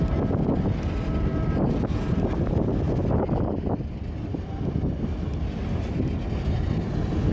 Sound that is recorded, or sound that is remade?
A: recorded